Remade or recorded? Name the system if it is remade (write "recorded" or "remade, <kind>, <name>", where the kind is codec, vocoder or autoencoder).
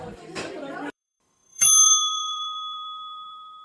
remade, vocoder, BigVGAN v2